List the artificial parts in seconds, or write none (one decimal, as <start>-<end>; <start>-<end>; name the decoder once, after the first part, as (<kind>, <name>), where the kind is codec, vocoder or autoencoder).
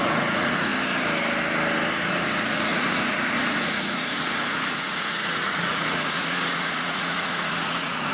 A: 0.0-0.7 (vocoder, Vocos); 2.1-8.1